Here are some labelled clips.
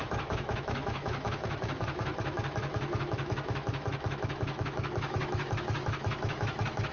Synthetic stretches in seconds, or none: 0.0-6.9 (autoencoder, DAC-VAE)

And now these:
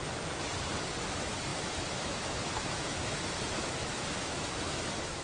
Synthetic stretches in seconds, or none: 1.0-5.2 (autoencoder, DAC-VAE)

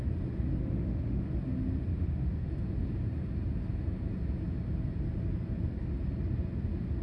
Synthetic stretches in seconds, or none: 0.6-1.3 (autoencoder, DAC-VAE); 1.9-2.5

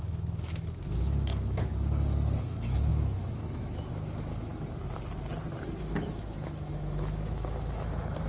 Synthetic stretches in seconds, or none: 0.0-1.7 (autoencoder, DAC-VAE); 2.4-4.5; 5.8-8.3

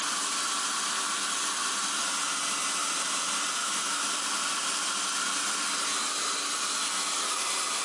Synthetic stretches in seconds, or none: 3.6-4.1 (autoencoder, DAC-VAE)

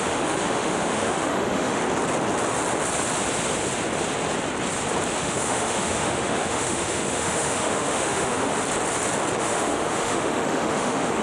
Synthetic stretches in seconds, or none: 0.0-1.8 (autoencoder, DAC-VAE); 5.2-8.5; 9.4-11.2

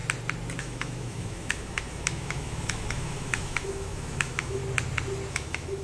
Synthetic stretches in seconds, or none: 0.6-4.6 (autoencoder, DAC-VAE); 5.3-5.8